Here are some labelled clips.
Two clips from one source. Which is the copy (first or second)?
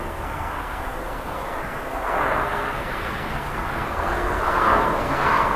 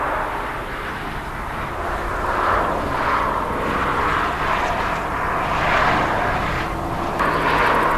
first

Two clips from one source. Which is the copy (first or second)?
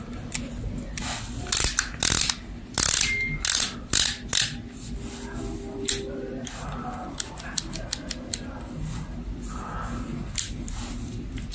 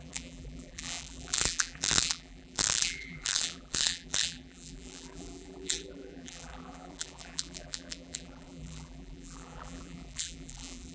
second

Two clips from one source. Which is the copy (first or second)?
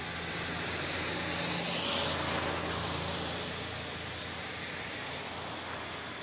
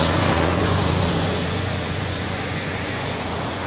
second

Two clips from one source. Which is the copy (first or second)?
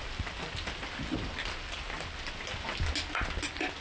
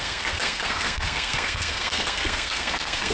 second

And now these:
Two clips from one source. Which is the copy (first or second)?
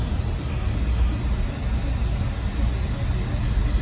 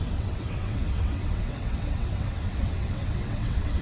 second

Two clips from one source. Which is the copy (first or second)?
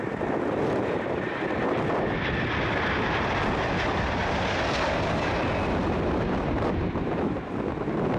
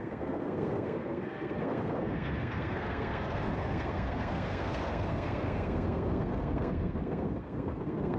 second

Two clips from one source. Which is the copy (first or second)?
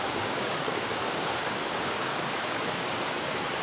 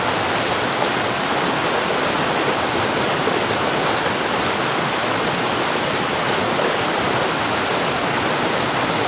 first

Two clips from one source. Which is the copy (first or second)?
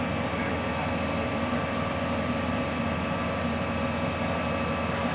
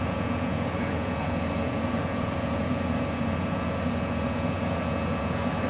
second